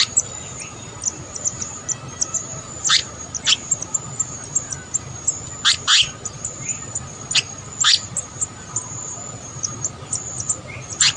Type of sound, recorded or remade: recorded